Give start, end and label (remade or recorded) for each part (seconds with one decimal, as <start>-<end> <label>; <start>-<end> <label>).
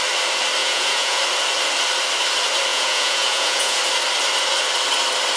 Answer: 0.0-0.6 recorded; 0.6-1.2 remade; 1.2-2.7 recorded; 2.7-3.8 remade; 3.8-5.4 recorded